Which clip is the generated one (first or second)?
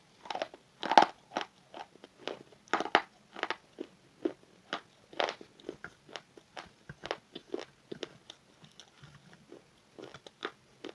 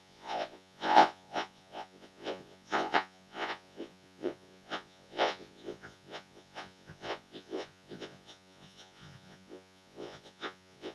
second